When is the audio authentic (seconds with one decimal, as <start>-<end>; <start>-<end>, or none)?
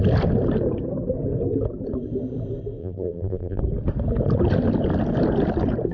0.0-2.8; 3.6-5.9